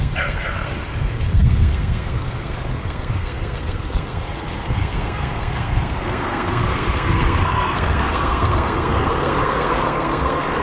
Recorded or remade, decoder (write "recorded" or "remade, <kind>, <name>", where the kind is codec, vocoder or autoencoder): remade, codec, SNAC